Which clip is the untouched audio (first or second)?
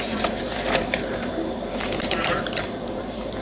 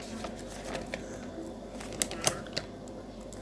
second